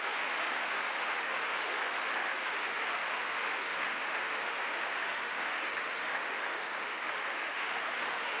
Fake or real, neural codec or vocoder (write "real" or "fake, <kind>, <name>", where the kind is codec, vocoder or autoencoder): fake, autoencoder, DAC-VAE